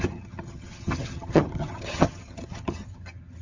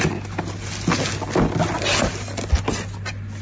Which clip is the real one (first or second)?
second